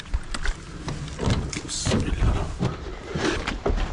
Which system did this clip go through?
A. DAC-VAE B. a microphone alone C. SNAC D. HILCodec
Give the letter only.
B